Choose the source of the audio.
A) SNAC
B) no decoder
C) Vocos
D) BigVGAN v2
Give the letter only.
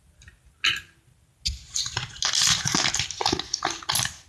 B